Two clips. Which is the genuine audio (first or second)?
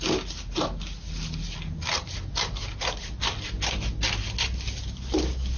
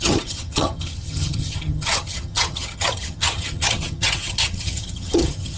first